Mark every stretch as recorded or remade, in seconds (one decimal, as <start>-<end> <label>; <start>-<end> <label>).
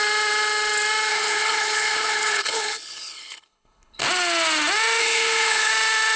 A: 0.0-1.1 recorded; 1.1-4.0 remade; 4.0-5.0 recorded; 5.0-5.7 remade; 5.7-6.2 recorded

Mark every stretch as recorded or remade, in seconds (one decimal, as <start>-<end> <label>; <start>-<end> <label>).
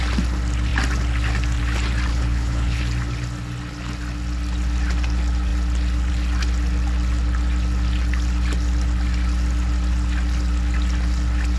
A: 0.0-2.1 recorded; 2.1-2.8 remade; 2.8-11.6 recorded